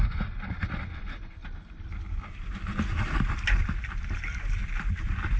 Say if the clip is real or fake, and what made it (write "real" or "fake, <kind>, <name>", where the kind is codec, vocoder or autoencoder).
real